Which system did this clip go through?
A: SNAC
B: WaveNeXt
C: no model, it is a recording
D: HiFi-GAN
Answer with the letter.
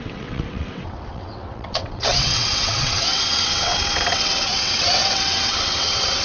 B